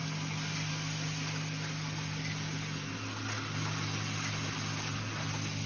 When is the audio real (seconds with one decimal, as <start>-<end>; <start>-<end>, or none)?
0.0-5.7